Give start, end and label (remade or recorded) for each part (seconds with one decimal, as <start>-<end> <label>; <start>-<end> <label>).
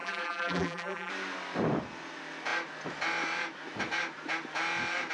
0.0-1.1 remade; 1.1-5.1 recorded